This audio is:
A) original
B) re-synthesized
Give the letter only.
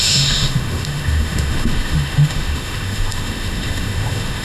B